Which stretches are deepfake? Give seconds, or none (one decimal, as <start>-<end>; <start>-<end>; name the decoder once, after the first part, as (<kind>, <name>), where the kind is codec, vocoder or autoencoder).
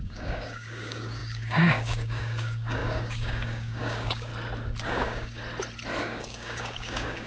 0.0-4.3 (codec, DAC); 4.8-5.4; 6.0-7.3